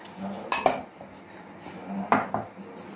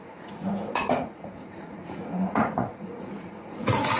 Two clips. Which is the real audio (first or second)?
first